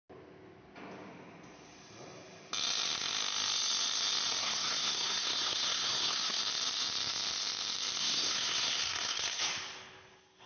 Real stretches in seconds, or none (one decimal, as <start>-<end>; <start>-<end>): 0.0-4.4; 6.4-8.0; 9.5-10.5